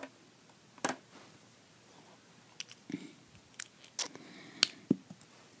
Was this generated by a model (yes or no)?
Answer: no